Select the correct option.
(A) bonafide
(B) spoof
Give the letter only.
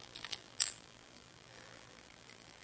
B